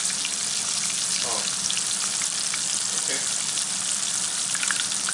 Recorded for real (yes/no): yes